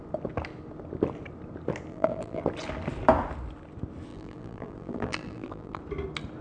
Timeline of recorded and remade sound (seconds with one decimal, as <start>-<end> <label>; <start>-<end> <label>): 0.0-1.9 recorded; 1.9-2.4 remade; 2.4-4.1 recorded; 4.1-5.8 remade; 5.8-6.4 recorded